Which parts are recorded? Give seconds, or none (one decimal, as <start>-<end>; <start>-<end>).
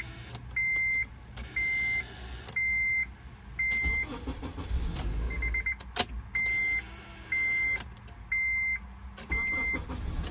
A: 0.0-10.3